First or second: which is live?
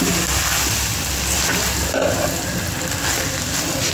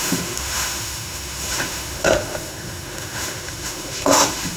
first